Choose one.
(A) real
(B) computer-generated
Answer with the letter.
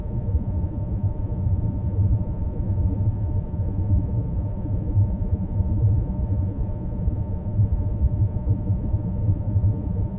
B